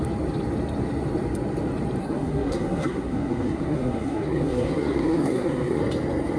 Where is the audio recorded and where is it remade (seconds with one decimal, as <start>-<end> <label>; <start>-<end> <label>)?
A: 0.0-2.0 recorded; 2.0-5.8 remade; 5.8-6.4 recorded